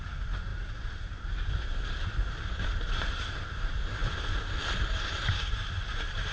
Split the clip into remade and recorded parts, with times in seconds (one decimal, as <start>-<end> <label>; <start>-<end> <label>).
0.0-6.3 remade